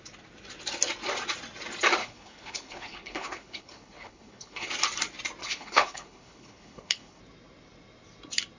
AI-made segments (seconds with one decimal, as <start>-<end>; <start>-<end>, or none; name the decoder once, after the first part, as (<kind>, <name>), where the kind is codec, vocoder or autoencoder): 2.0-4.7 (codec, HILCodec); 5.4-7.2